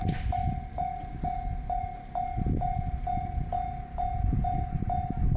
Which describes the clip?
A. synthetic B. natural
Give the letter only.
B